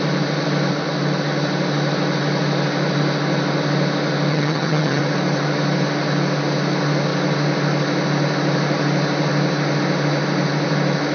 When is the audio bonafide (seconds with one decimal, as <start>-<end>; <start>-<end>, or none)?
0.0-4.3; 5.0-11.1